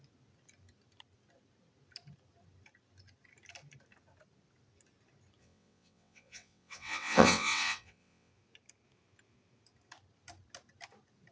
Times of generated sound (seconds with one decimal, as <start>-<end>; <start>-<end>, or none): 5.4-8.3

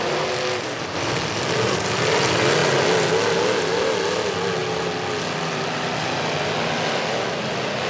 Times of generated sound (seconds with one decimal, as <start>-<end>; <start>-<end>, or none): none

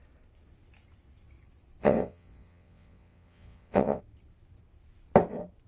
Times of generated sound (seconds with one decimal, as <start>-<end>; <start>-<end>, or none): 1.8-4.0

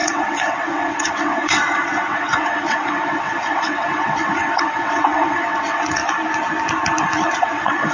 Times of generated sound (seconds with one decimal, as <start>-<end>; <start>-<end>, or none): 0.0-6.0; 7.4-7.9

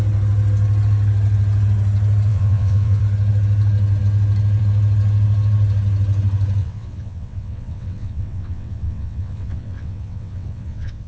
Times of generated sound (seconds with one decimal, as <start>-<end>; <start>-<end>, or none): 2.3-3.0; 6.6-11.1

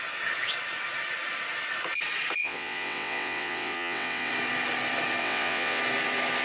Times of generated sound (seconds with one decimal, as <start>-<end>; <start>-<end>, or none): 2.4-4.3; 5.2-5.8